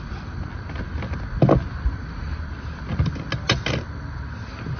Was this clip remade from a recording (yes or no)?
no